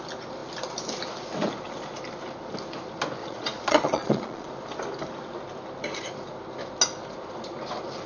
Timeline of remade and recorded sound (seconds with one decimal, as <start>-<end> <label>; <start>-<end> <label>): 0.0-3.2 recorded; 3.2-4.5 remade; 4.5-8.1 recorded